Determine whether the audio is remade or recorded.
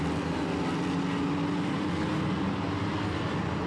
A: recorded